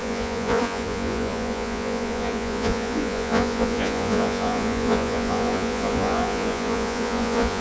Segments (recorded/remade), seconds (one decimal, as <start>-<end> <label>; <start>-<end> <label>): 0.0-7.6 remade